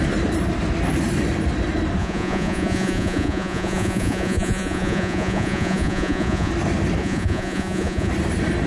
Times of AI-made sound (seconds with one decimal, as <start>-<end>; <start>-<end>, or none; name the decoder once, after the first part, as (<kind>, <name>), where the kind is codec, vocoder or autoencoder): 2.0-6.5 (vocoder, Vocos); 7.0-8.1